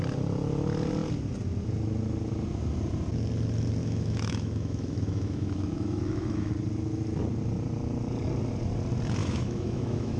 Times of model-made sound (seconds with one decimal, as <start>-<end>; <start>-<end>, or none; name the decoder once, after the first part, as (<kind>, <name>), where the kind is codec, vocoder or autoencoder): 3.8-6.5 (autoencoder, DAC-VAE); 9.2-10.2